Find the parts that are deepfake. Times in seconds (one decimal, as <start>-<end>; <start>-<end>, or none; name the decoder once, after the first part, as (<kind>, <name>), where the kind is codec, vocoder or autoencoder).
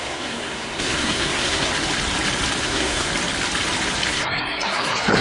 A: 0.0-1.7 (codec, SNAC); 2.6-3.1; 4.1-5.2